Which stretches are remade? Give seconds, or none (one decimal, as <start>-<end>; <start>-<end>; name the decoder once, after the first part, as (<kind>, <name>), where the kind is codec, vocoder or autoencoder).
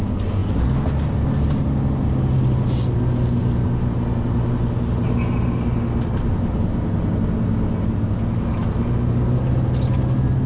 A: none